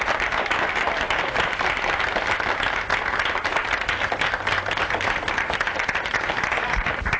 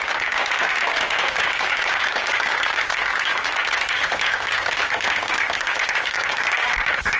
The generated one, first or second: second